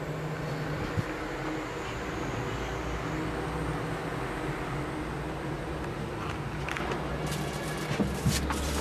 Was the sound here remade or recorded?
recorded